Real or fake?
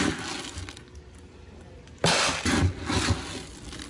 real